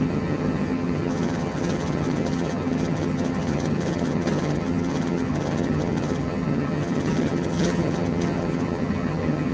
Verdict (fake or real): fake